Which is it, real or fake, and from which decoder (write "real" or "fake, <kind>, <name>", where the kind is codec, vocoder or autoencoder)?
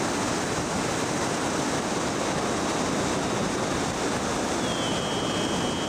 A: real